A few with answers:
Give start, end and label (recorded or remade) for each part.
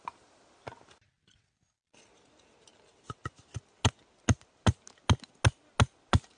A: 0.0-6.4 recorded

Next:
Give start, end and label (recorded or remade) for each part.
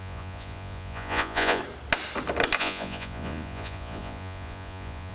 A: 0.0-1.6 remade; 1.6-2.6 recorded; 2.6-5.1 remade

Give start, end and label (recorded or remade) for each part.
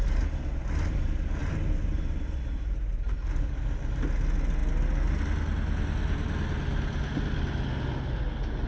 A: 0.0-1.4 recorded; 1.4-4.0 remade; 4.0-8.7 recorded